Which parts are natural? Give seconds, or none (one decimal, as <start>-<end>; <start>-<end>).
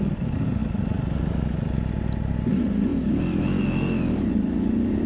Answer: 0.0-5.1